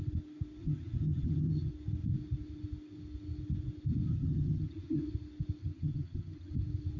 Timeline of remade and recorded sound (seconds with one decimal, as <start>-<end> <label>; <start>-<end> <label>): 0.0-0.6 recorded; 0.6-1.7 remade; 1.7-4.1 recorded; 4.1-5.0 remade; 5.0-5.6 recorded; 5.6-6.5 remade; 6.5-7.0 recorded